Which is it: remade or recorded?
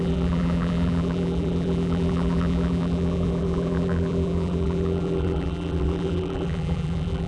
remade